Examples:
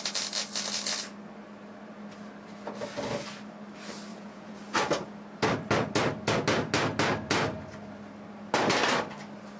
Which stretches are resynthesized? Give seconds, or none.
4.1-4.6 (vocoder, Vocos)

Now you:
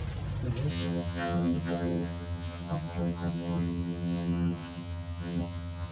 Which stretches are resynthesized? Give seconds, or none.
0.7-5.9 (vocoder, HiFi-GAN)

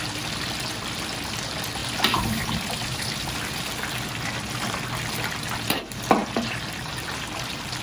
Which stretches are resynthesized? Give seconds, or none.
1.8-3.4 (vocoder, BigVGAN v2); 6.2-7.8

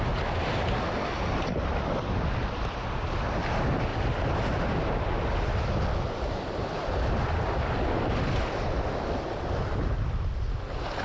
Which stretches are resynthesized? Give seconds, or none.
none

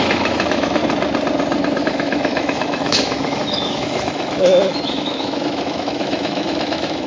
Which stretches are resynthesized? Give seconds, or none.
0.0-0.8 (autoencoder, DAC-VAE); 1.8-7.1